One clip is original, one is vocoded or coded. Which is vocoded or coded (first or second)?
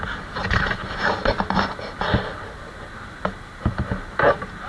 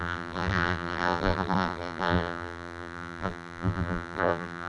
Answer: second